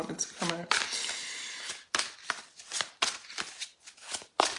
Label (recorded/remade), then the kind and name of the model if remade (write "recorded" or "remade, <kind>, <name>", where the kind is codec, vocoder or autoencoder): recorded